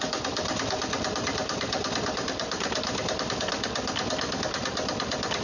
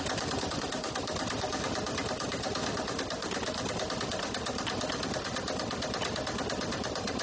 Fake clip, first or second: second